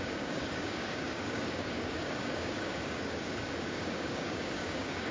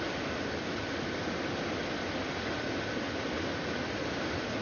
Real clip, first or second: second